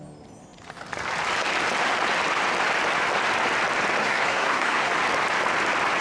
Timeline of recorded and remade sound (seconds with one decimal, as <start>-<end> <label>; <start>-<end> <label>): 0.0-4.0 recorded; 4.0-4.9 remade; 4.9-6.0 recorded